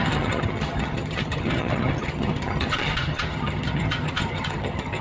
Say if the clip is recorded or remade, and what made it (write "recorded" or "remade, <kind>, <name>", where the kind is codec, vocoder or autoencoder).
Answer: remade, vocoder, HiFi-GAN